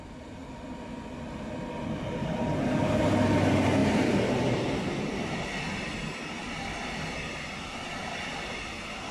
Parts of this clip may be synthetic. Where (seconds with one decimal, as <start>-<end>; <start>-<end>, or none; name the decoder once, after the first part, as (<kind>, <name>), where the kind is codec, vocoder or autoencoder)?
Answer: 2.2-2.7 (vocoder, BigVGAN v2); 3.8-5.4